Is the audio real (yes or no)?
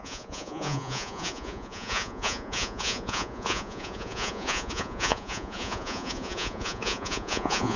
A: no